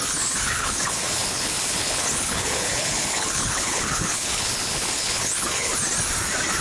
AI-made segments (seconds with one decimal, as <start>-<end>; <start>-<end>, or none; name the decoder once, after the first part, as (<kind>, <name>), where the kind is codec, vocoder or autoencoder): 0.0-5.7 (codec, HILCodec)